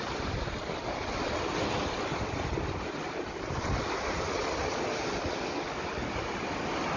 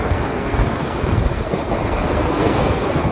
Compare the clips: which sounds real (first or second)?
first